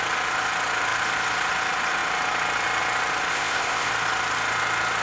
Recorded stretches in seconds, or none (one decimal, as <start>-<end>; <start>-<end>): 0.0-3.3; 3.9-5.0